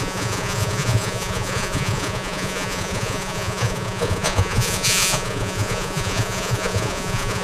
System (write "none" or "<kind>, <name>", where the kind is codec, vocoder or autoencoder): vocoder, Vocos